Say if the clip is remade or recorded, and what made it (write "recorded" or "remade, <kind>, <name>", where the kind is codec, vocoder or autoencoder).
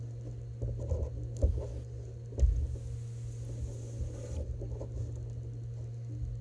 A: recorded